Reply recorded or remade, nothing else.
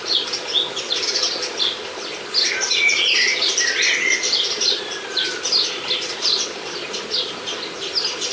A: recorded